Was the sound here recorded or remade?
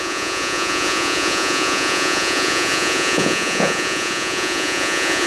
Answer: remade